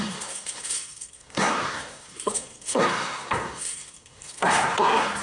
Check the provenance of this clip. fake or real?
fake